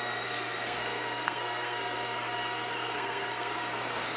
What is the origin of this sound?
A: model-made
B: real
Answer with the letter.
A